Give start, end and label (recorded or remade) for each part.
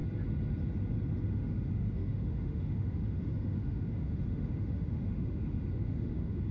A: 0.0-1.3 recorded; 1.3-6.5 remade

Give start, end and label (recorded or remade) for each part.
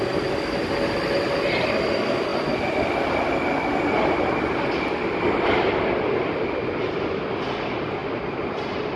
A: 0.0-9.0 recorded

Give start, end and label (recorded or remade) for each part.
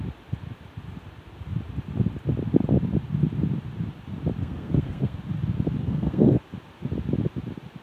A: 0.0-4.4 recorded; 4.4-5.2 remade; 5.2-5.8 recorded; 5.8-6.4 remade; 6.4-7.8 recorded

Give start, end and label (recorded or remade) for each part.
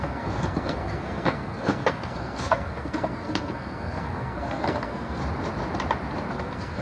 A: 0.0-5.2 remade; 5.2-6.3 recorded; 6.3-6.8 remade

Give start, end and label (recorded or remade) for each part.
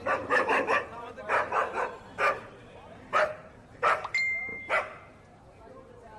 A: 0.0-6.2 remade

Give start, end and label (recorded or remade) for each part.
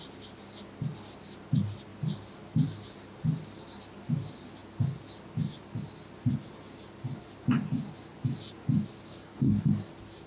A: 0.0-9.1 recorded; 9.1-9.7 remade; 9.7-10.3 recorded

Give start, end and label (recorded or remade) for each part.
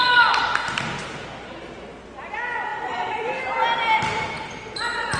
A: 0.0-2.7 recorded; 2.7-3.4 remade; 3.4-5.2 recorded